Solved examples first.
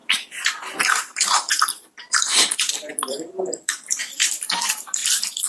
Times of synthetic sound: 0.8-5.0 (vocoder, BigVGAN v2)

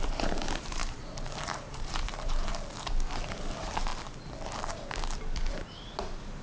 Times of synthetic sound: 0.0-2.5 (vocoder, BigVGAN v2); 3.5-3.9; 5.5-6.4